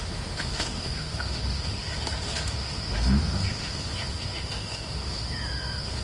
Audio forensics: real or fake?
fake